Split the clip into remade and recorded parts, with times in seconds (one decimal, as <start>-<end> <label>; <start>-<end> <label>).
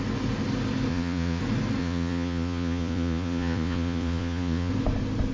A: 0.0-0.9 recorded; 0.9-1.4 remade; 1.4-1.8 recorded; 1.8-4.7 remade; 4.7-5.3 recorded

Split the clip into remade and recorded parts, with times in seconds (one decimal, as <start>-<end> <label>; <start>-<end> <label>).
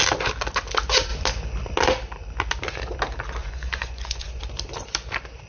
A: 0.0-3.4 recorded; 3.4-4.4 remade; 4.4-5.5 recorded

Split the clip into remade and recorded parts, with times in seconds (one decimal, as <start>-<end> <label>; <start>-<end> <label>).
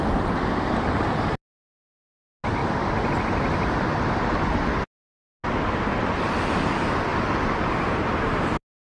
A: 0.0-8.8 recorded